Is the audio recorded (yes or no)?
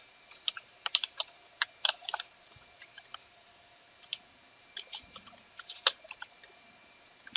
no